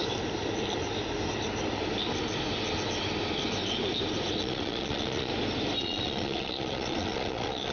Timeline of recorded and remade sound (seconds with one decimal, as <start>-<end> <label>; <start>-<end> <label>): 0.0-4.4 recorded; 4.4-5.3 remade; 5.3-5.8 recorded; 5.8-7.7 remade